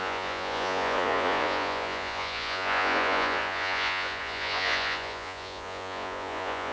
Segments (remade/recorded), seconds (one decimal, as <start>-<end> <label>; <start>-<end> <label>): 0.0-6.7 remade